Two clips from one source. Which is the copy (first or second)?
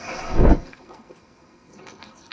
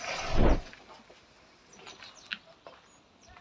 first